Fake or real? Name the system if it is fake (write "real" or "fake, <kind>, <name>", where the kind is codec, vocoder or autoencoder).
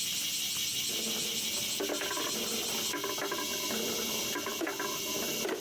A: real